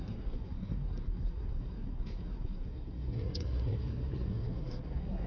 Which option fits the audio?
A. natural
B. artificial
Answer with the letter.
B